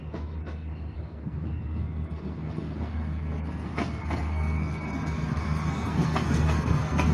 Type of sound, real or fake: fake